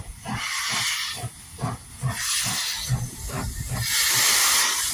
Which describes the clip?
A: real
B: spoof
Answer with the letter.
A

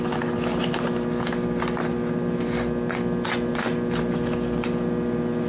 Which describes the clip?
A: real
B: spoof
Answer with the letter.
A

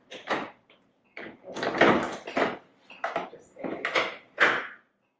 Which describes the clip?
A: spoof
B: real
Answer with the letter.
B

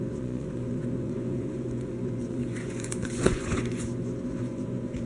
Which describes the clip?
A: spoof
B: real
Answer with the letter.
A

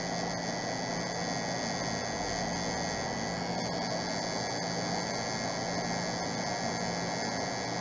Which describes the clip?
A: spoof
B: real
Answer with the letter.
B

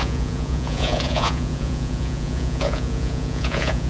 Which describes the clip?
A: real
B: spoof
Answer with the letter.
B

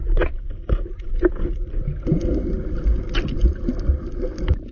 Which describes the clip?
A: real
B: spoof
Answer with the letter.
A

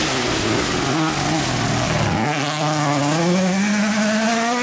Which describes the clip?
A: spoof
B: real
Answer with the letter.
B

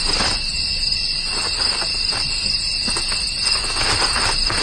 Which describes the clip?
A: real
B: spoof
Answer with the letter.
A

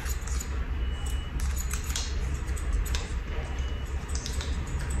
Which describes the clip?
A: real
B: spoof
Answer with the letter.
A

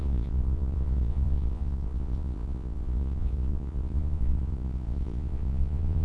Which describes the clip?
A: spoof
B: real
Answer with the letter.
A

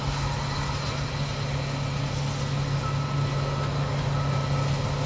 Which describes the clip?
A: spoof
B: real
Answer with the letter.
B